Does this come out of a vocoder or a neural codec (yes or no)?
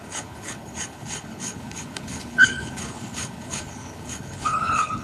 yes